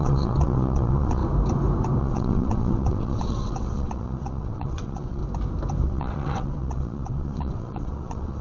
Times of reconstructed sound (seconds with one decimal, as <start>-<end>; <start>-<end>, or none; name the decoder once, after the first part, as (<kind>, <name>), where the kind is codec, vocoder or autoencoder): 0.0-1.2 (vocoder, WaveNeXt); 2.0-5.2; 5.8-8.4